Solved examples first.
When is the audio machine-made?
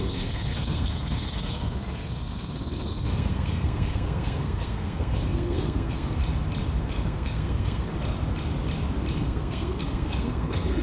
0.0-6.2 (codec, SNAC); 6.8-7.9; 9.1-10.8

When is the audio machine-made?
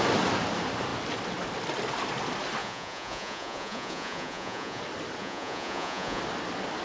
2.6-4.8 (vocoder, Vocos); 5.2-6.2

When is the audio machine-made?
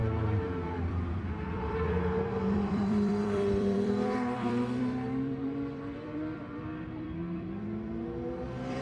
0.7-8.8 (vocoder, BigVGAN v2)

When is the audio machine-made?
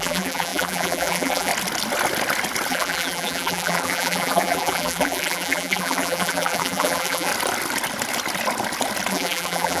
0.0-1.5 (vocoder, BigVGAN v2); 2.7-7.3; 9.1-9.8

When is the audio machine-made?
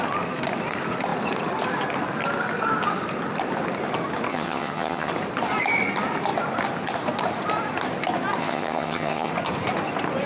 4.3-5.1 (vocoder, HiFi-GAN); 8.4-9.3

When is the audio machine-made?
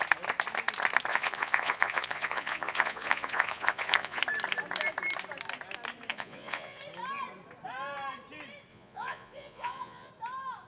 1.1-4.2 (vocoder, Vocos); 6.1-6.8; 8.7-10.1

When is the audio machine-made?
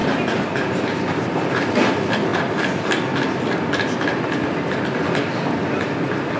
0.0-0.7 (vocoder, BigVGAN v2)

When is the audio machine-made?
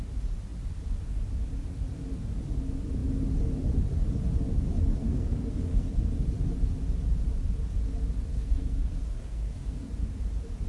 5.0-6.1 (codec, SNAC); 8.3-9.9